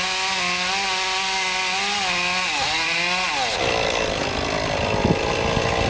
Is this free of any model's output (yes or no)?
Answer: yes